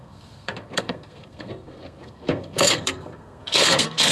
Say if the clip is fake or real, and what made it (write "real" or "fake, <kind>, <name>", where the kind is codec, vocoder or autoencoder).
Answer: fake, codec, SNAC